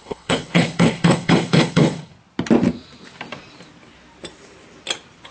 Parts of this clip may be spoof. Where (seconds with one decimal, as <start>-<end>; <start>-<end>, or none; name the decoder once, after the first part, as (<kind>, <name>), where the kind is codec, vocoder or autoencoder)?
0.0-2.1 (codec, HILCodec)